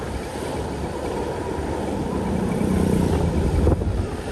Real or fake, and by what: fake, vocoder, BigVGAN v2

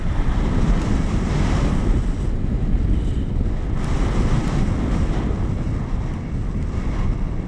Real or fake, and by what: real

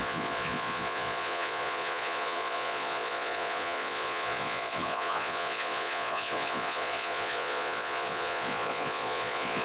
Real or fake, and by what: fake, vocoder, Vocos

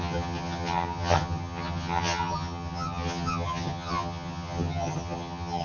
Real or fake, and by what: fake, vocoder, HiFi-GAN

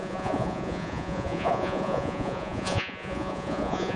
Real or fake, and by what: fake, vocoder, Vocos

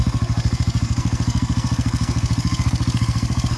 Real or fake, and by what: fake, codec, SNAC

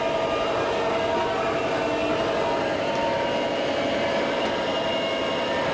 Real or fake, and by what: real